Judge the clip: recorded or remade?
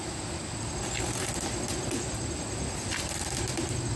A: recorded